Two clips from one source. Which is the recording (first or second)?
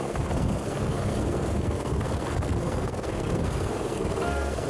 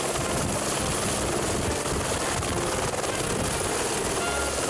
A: second